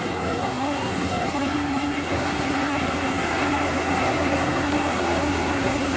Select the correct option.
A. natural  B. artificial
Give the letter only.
B